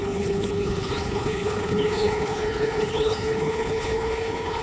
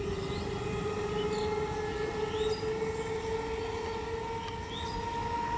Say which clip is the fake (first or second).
first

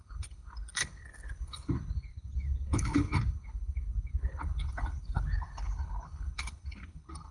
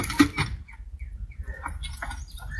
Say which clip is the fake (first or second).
first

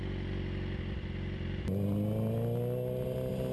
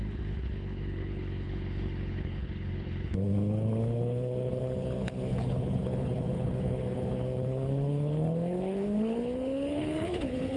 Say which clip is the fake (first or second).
second